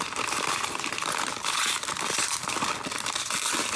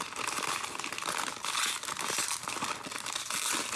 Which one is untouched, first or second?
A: second